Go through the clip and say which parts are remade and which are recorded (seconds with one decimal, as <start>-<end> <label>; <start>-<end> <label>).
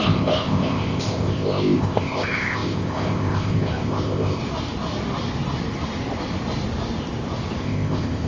0.0-4.4 remade; 4.4-7.6 recorded; 7.6-8.3 remade